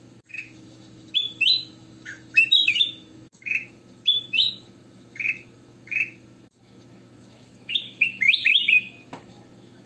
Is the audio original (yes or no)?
no